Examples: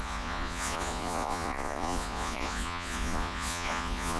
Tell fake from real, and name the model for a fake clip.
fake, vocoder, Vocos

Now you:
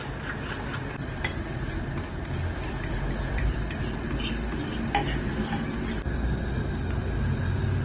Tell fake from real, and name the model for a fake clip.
real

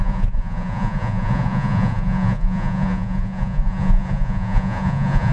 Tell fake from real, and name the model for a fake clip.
fake, vocoder, Vocos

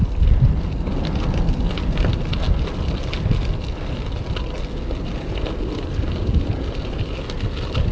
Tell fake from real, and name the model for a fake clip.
real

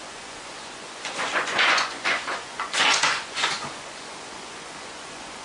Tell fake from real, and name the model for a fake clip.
fake, vocoder, Vocos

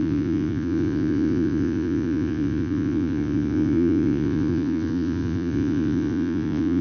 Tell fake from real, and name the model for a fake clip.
fake, vocoder, Vocos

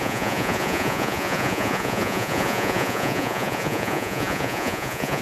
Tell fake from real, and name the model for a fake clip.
fake, vocoder, Vocos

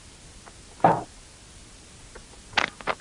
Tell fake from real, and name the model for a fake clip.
real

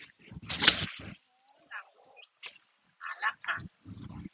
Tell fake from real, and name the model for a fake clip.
real